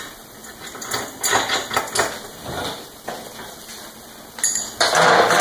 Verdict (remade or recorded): recorded